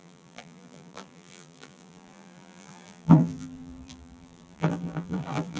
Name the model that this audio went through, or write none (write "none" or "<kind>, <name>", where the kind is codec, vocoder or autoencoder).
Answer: vocoder, BigVGAN v2